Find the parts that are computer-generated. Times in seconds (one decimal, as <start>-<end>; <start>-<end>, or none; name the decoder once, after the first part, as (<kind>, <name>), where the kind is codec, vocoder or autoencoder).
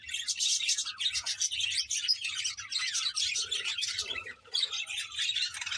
0.0-0.9 (vocoder, BigVGAN v2); 3.2-5.8